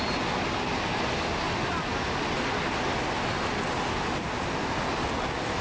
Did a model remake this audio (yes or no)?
no